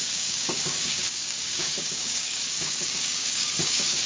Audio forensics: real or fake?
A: fake